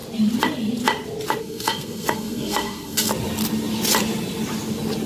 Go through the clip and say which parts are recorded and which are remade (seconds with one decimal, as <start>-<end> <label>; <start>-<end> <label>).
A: 0.0-1.4 recorded; 1.4-3.1 remade; 3.1-5.1 recorded